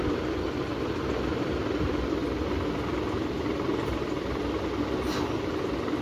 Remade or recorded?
recorded